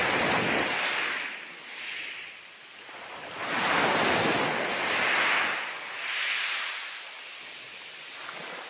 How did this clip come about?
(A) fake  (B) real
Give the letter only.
B